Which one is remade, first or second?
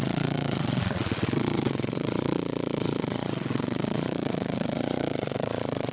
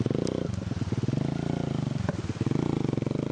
first